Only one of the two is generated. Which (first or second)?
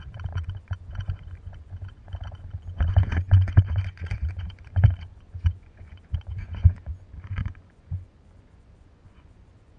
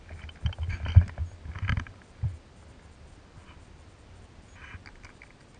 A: first